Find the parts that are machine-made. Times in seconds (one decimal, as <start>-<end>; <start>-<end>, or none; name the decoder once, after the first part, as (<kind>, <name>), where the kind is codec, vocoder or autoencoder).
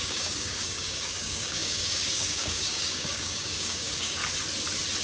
0.0-4.2 (codec, DAC)